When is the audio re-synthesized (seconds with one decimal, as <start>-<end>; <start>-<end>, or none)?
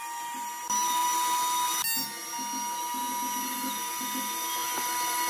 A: none